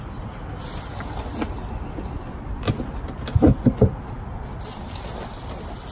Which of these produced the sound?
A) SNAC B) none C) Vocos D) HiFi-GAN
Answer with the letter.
B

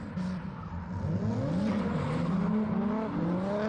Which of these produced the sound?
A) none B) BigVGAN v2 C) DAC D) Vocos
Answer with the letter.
A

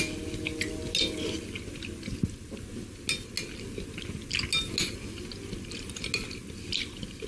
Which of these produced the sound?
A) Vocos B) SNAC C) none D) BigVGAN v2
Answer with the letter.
C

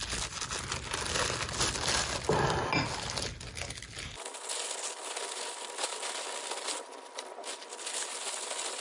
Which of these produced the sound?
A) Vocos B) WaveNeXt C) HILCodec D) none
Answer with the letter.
D